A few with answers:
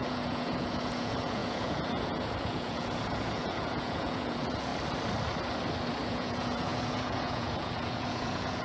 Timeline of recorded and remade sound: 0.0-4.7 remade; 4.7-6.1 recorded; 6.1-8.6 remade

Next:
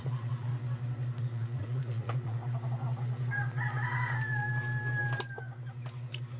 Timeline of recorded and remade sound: 0.0-0.5 remade; 0.5-1.2 recorded; 1.2-2.4 remade; 2.4-6.4 recorded

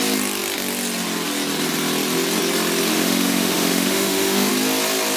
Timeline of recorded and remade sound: 0.0-2.9 recorded; 2.9-4.5 remade; 4.5-5.2 recorded